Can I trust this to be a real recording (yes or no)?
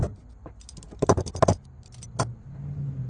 yes